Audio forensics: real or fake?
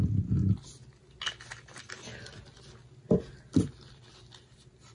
real